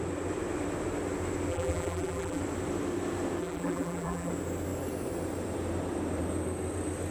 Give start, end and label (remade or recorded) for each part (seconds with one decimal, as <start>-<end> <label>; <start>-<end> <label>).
0.0-1.5 recorded; 1.5-2.4 remade; 2.4-3.4 recorded; 3.4-4.3 remade; 4.3-7.1 recorded